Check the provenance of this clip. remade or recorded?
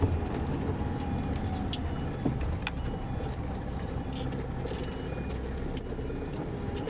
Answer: recorded